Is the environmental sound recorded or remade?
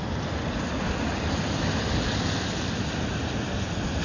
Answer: recorded